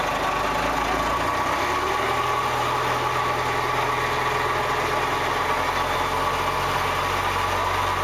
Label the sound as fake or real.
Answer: real